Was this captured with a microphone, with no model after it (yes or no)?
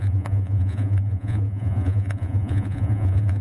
no